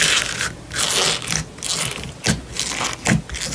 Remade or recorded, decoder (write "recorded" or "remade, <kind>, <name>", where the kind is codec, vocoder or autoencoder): recorded